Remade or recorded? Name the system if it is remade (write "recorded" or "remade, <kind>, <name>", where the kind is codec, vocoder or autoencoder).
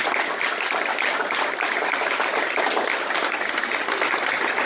recorded